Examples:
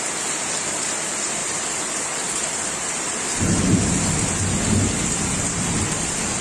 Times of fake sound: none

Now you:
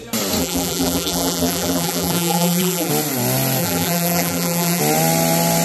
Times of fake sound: 0.4-2.9 (vocoder, BigVGAN v2); 3.6-4.8

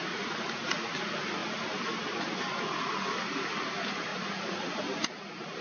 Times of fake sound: 0.0-0.9 (vocoder, Vocos); 4.1-4.8

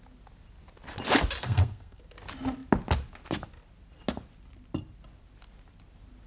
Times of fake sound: 1.4-2.0 (codec, SNAC)

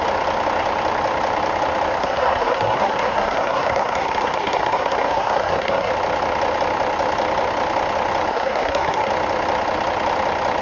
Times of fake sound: 2.0-5.9 (codec, SNAC); 8.3-9.1

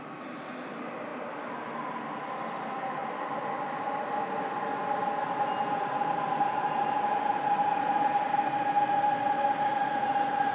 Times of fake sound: none

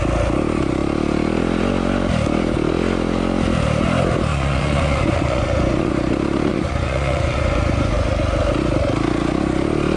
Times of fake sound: 4.3-5.9 (vocoder, Vocos); 6.5-8.1